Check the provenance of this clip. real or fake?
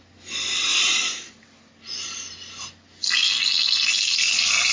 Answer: real